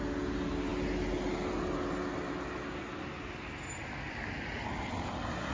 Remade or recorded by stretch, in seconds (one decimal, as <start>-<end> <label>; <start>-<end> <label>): 0.0-5.5 recorded